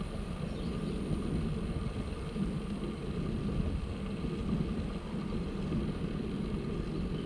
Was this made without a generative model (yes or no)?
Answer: yes